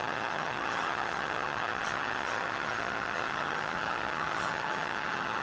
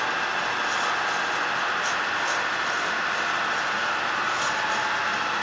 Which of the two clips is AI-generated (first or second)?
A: first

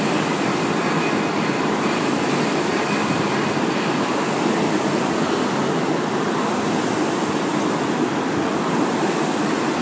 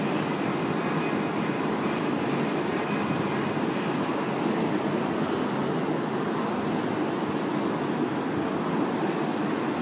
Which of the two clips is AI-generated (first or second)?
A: first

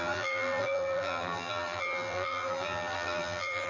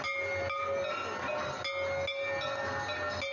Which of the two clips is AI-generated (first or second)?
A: first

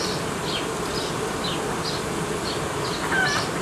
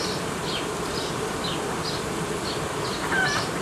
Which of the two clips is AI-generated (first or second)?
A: second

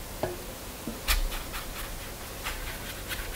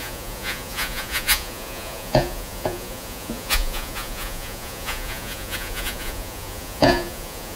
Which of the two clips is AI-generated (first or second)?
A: second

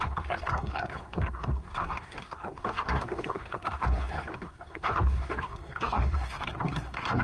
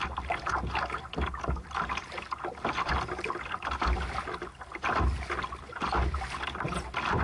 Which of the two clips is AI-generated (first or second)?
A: first